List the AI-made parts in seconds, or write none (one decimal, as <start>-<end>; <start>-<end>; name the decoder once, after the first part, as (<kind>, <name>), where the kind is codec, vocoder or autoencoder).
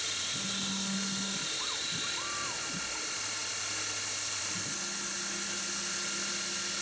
none